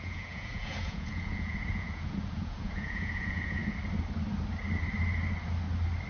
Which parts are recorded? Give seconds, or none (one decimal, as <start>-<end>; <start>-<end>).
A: 3.6-6.1